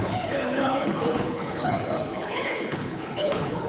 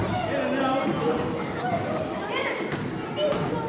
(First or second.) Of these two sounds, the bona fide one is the second